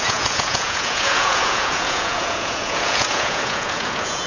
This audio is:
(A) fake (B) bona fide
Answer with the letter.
A